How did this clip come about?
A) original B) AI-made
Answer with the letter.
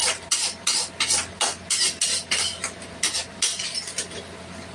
A